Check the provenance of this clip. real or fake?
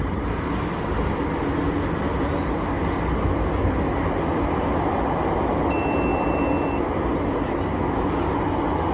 real